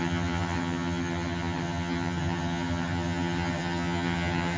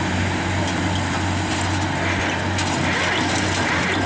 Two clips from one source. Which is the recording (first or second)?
second